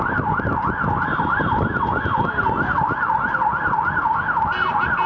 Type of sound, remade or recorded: recorded